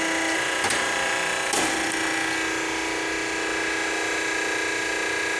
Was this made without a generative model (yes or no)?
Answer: yes